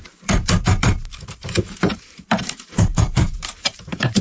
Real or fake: fake